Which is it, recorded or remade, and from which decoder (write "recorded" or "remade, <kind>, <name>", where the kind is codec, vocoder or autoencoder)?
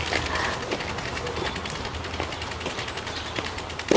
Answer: recorded